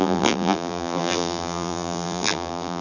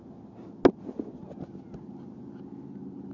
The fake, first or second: first